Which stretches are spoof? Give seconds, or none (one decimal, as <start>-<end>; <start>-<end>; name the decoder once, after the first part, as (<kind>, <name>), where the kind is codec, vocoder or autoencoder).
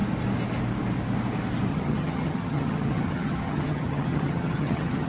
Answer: 1.7-5.1 (vocoder, HiFi-GAN)